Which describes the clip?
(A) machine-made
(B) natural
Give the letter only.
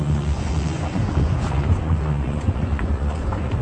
A